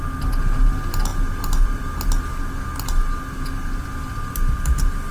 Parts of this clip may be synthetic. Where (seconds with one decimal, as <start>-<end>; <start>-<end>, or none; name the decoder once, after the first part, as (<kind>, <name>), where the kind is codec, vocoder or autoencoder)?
none